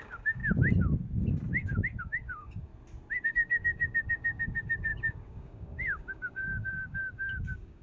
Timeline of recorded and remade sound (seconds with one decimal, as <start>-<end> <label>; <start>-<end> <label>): 0.0-0.4 remade; 0.4-2.0 recorded; 2.0-2.7 remade; 2.7-3.3 recorded; 3.3-7.8 remade

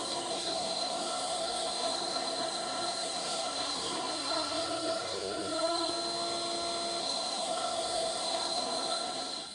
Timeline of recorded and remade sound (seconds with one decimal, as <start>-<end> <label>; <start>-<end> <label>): 0.0-5.9 remade; 5.9-7.0 recorded; 7.0-9.5 remade

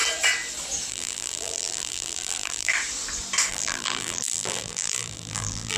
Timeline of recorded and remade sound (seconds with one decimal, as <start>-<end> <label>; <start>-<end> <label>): 0.0-0.9 recorded; 0.9-2.7 remade; 2.7-3.5 recorded; 3.5-5.8 remade

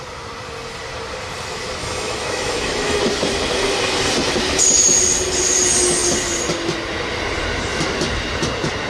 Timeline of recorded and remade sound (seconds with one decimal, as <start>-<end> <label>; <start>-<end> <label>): 0.0-1.8 recorded; 1.8-3.0 remade; 3.0-8.9 recorded

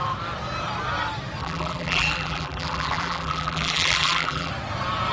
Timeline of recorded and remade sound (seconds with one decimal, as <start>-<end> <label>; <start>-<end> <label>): 0.0-1.4 recorded; 1.4-4.5 remade; 4.5-5.1 recorded

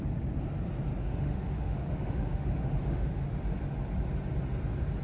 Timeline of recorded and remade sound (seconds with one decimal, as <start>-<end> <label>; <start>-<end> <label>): 0.0-1.0 recorded; 1.0-3.4 remade; 3.4-5.0 recorded